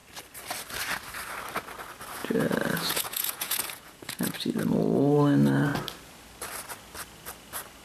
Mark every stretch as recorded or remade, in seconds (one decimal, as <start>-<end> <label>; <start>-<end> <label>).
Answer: 0.0-2.2 recorded; 2.2-4.3 remade; 4.3-7.8 recorded